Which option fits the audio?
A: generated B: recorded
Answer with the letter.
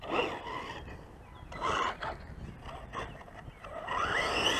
B